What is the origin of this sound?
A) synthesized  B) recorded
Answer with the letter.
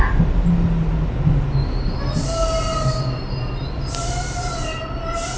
B